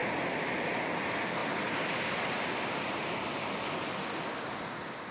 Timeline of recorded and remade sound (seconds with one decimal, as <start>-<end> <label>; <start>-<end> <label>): 0.0-5.1 recorded

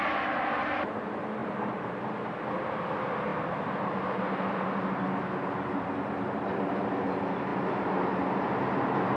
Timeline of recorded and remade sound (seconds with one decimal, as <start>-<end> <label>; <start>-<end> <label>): 0.0-1.4 recorded; 1.4-1.9 remade; 1.9-9.2 recorded

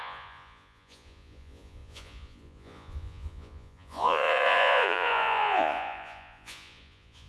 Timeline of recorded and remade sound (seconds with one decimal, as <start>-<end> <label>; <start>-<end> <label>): 0.0-7.3 remade

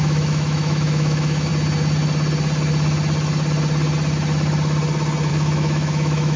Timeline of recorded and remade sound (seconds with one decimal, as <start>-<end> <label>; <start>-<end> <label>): 0.0-1.5 remade; 1.5-5.3 recorded; 5.3-6.4 remade

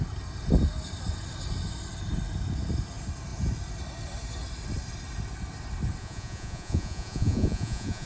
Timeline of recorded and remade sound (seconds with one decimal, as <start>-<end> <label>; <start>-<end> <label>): 0.0-6.0 recorded; 6.0-8.1 remade

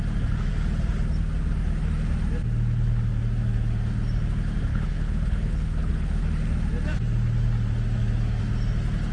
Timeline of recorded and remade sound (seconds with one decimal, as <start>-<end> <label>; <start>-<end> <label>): 0.0-4.7 recorded; 4.7-6.2 remade; 6.2-9.1 recorded

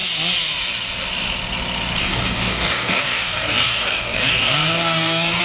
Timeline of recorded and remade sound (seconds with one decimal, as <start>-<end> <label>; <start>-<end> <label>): 0.0-2.0 recorded; 2.0-5.4 remade

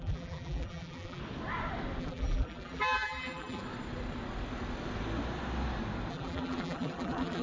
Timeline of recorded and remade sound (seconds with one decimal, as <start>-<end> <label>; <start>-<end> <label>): 0.0-1.2 remade; 1.2-2.0 recorded; 2.0-3.6 remade; 3.6-6.1 recorded; 6.1-7.4 remade